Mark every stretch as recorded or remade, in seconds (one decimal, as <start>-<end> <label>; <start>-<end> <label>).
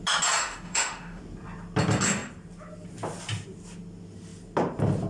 0.0-0.4 recorded; 0.4-1.2 remade; 1.2-5.1 recorded